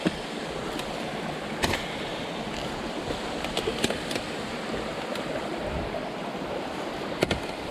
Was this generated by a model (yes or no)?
no